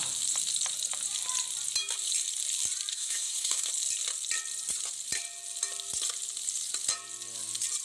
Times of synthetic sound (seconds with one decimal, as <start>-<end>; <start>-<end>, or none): 2.9-3.7